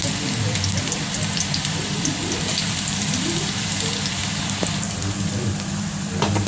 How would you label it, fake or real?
fake